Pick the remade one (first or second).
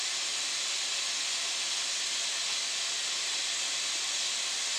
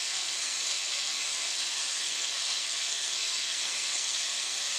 second